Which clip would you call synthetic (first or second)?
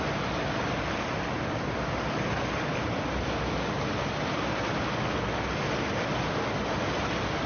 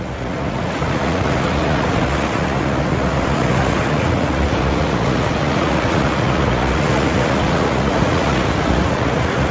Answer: second